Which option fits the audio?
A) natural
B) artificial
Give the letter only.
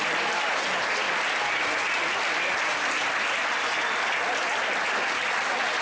A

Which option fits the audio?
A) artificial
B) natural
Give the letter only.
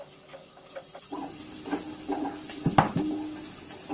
B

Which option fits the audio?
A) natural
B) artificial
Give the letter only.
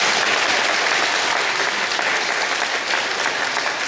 A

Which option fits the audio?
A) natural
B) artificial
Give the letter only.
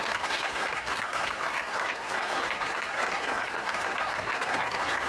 B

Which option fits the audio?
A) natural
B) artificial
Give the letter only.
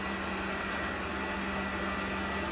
A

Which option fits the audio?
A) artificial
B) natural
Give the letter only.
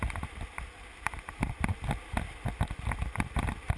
B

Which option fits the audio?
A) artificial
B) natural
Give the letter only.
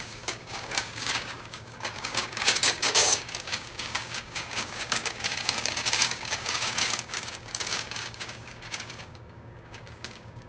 A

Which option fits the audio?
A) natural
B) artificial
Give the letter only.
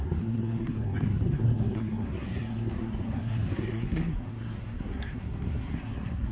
B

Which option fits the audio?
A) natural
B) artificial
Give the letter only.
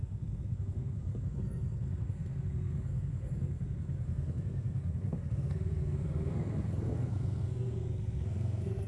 B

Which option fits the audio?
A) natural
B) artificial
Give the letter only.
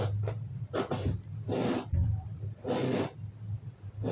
A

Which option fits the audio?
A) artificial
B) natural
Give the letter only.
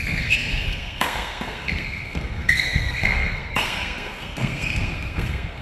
A